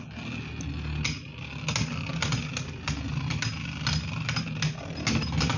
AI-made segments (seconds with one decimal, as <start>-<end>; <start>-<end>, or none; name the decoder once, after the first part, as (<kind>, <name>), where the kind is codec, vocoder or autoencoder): none